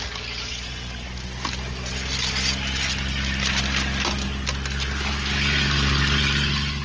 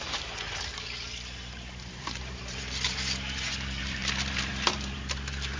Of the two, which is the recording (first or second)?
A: first